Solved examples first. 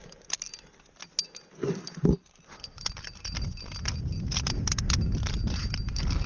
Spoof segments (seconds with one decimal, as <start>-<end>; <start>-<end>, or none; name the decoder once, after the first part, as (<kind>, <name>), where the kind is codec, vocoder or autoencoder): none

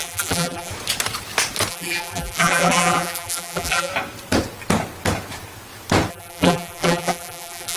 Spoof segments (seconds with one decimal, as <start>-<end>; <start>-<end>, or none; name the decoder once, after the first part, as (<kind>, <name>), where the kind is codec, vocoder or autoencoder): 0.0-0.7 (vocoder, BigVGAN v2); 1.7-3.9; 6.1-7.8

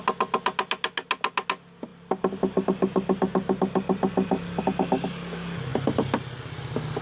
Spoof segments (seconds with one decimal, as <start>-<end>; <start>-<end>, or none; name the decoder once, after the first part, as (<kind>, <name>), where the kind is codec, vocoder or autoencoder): none